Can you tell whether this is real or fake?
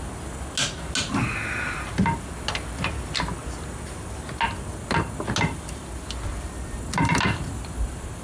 real